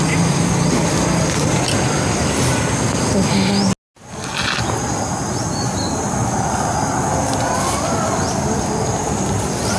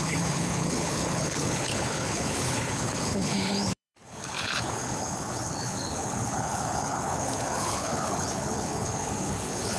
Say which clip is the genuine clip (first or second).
first